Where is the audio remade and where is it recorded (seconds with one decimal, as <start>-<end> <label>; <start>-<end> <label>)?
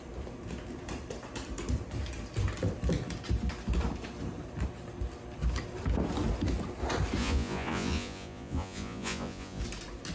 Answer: 0.0-7.2 recorded; 7.2-9.6 remade; 9.6-10.1 recorded